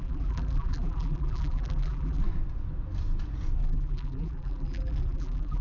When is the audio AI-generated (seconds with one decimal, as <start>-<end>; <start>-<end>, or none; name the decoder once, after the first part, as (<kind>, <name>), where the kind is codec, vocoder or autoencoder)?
0.0-2.2 (vocoder, BigVGAN v2); 3.6-5.6